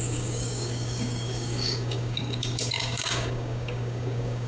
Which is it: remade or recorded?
remade